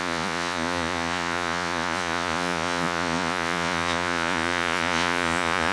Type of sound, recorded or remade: remade